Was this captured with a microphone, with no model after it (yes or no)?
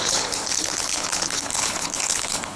no